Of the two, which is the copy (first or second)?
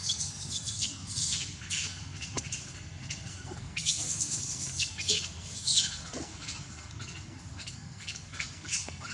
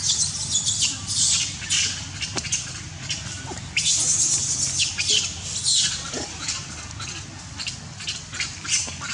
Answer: first